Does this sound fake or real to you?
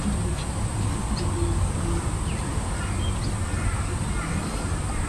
real